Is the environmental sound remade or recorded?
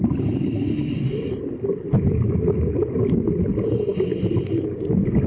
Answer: recorded